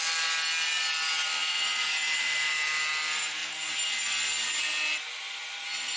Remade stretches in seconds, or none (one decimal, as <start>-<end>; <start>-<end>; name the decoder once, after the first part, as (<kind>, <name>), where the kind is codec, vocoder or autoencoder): none